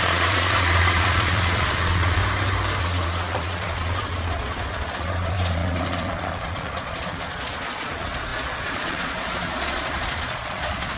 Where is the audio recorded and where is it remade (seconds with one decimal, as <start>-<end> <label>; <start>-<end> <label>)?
0.0-2.2 remade; 2.2-2.8 recorded; 2.8-11.0 remade